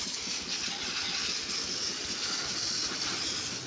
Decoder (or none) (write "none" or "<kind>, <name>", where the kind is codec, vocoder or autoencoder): none